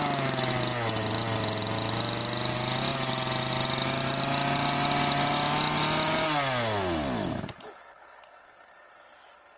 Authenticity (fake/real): real